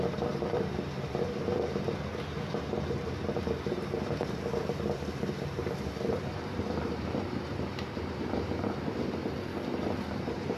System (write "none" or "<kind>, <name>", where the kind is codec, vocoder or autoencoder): vocoder, BigVGAN v2